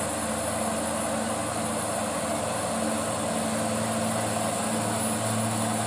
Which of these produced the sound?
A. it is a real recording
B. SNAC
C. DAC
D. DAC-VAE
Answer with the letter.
A